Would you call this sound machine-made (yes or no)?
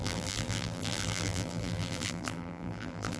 yes